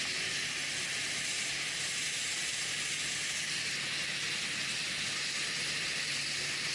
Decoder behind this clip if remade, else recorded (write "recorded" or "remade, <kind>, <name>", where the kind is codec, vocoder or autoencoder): recorded